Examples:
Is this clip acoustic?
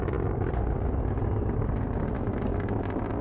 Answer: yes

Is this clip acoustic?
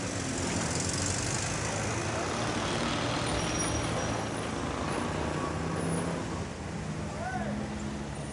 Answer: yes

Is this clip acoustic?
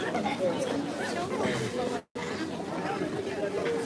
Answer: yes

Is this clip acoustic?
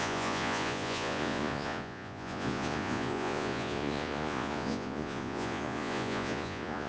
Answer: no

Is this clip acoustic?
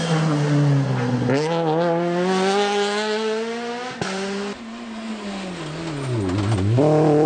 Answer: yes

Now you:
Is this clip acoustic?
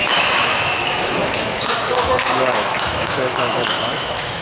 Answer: no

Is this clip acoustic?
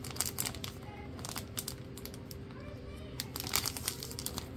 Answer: yes